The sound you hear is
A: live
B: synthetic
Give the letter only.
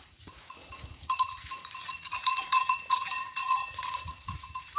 B